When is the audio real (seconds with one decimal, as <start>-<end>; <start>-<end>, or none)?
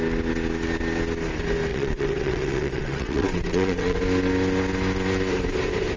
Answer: 0.0-1.7; 4.0-6.0